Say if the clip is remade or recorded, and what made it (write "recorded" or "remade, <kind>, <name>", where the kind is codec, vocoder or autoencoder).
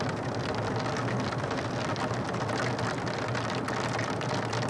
recorded